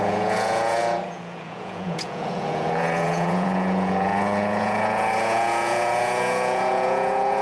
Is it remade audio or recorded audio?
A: remade